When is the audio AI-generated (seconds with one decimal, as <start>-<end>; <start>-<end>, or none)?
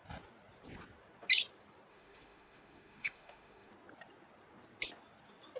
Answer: 1.9-3.7